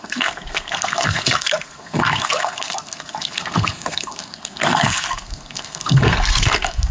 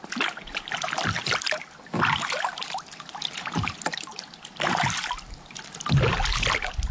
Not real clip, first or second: first